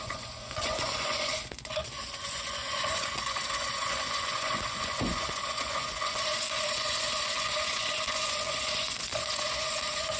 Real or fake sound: fake